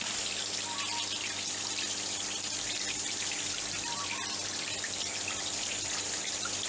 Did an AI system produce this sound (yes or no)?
no